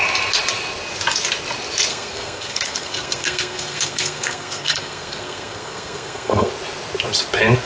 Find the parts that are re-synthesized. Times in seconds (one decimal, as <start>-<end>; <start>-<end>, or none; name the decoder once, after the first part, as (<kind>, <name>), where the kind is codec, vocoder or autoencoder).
1.9-6.5 (codec, SNAC)